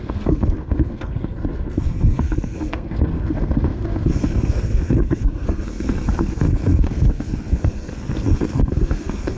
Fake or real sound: fake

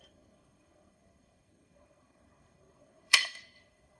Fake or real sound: fake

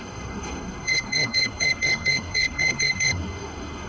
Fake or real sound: fake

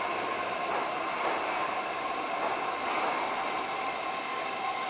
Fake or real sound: real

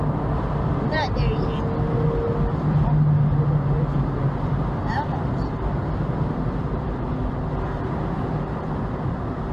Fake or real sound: real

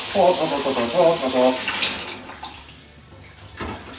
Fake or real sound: real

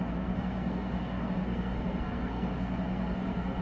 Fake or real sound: fake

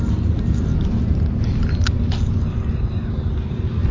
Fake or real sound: real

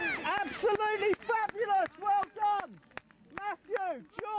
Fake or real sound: real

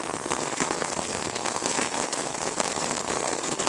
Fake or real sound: fake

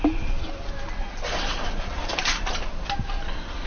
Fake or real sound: real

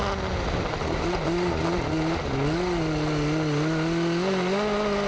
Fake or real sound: real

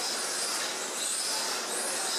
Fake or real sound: real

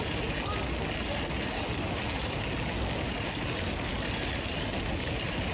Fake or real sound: real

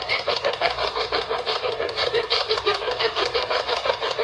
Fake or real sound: fake